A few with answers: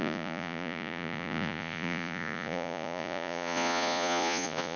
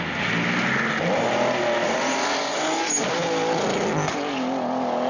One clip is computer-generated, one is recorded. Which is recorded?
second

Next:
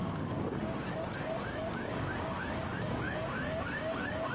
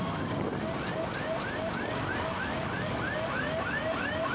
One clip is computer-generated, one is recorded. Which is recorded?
second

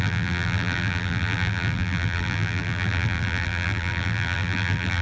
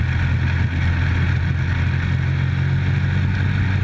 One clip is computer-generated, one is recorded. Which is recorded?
second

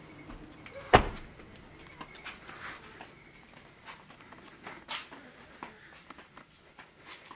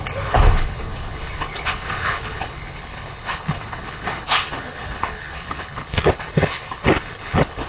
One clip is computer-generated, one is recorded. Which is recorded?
first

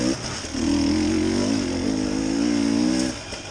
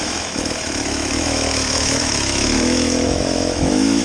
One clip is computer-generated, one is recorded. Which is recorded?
first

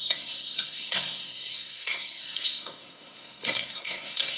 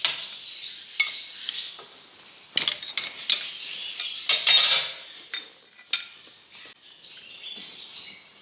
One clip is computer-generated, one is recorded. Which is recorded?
second